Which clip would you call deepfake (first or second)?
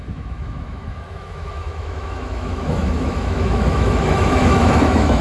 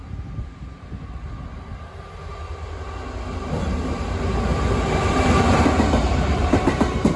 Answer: first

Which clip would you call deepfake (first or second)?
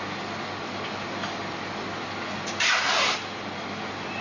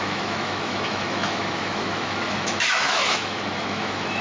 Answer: second